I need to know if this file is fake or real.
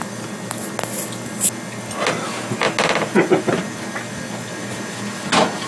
real